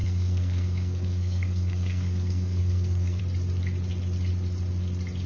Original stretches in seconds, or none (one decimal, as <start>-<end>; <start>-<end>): 3.2-5.3